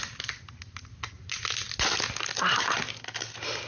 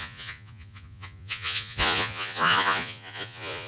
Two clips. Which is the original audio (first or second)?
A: first